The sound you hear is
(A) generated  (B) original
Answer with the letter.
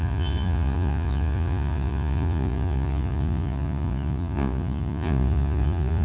A